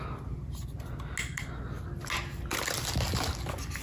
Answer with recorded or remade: recorded